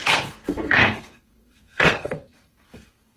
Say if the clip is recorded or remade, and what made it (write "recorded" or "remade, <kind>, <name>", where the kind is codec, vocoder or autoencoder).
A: remade, codec, SNAC